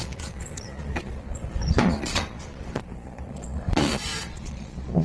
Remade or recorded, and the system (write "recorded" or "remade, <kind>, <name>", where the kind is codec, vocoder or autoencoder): remade, vocoder, Vocos